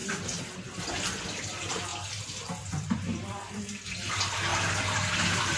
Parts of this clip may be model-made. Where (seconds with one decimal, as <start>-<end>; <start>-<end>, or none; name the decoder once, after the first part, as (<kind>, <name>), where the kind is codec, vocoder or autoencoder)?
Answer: 0.0-1.2 (vocoder, BigVGAN v2); 1.9-4.1; 4.5-5.1